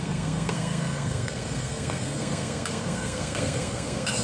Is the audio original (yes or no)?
no